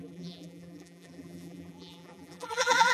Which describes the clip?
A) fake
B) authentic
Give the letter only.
A